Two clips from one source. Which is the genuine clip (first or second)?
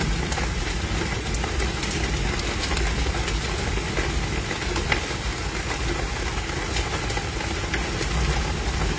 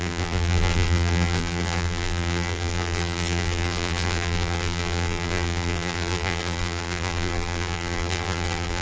first